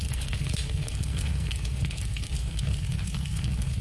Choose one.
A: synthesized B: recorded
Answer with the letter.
A